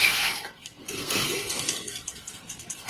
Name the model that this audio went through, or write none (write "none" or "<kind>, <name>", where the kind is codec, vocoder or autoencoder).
codec, SNAC